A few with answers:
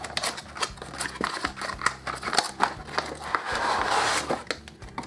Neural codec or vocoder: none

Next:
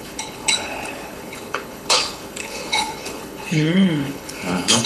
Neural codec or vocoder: codec, HILCodec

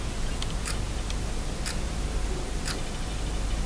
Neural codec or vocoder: none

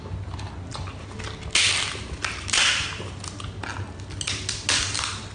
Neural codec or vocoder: none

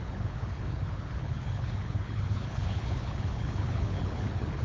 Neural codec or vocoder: codec, HILCodec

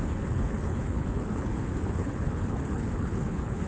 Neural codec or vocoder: codec, HILCodec